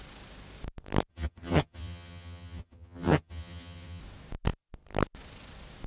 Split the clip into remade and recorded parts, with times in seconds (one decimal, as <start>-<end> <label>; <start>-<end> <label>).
0.0-1.1 recorded; 1.1-4.0 remade; 4.0-5.9 recorded